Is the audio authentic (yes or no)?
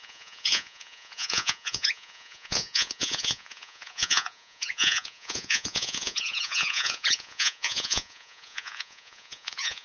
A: no